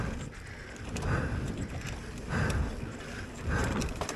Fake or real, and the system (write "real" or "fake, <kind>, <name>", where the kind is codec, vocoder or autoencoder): real